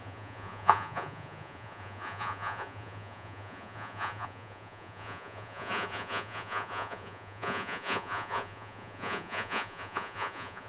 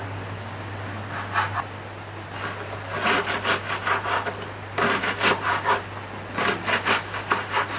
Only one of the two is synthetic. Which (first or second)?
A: first